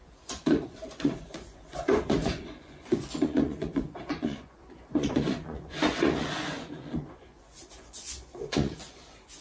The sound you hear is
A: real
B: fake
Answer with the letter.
B